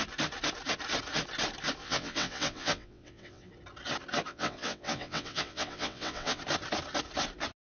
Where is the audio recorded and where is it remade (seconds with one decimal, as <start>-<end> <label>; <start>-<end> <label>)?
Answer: 0.0-1.8 recorded; 1.8-3.5 remade; 3.5-4.3 recorded; 4.3-6.4 remade; 6.4-7.6 recorded